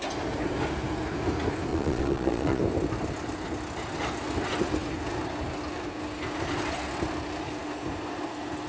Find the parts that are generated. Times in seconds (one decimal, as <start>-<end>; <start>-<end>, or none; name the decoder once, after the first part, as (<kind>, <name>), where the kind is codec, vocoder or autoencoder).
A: 1.7-2.6 (vocoder, Vocos)